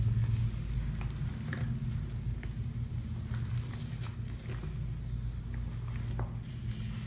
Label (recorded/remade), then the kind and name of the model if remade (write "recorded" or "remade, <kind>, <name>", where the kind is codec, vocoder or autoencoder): recorded